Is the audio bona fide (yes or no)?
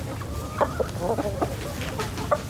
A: yes